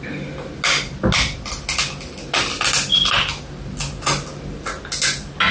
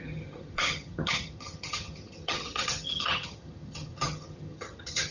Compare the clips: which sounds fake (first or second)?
second